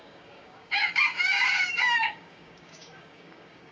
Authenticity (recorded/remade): remade